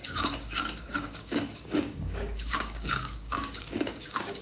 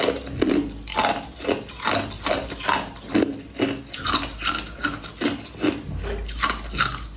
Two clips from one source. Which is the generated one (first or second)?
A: first